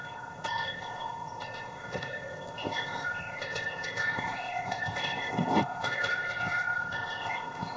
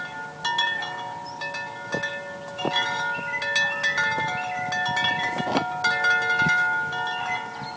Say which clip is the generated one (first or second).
first